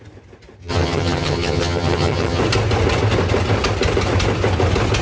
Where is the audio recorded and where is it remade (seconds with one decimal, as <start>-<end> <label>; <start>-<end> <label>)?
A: 0.0-0.6 recorded; 0.6-2.4 remade; 2.4-5.0 recorded